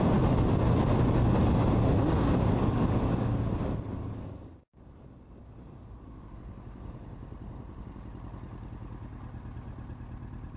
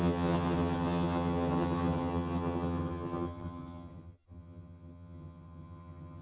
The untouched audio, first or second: first